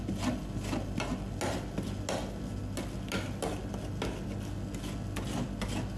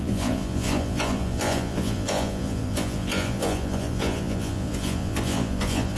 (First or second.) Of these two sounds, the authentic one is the first